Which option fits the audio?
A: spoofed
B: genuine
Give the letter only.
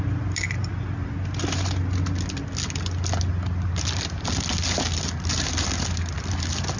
B